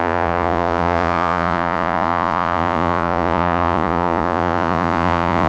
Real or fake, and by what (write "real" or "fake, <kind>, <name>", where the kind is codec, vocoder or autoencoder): fake, vocoder, Vocos